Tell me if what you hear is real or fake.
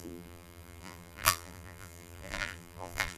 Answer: fake